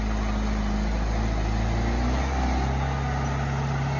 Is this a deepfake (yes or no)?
no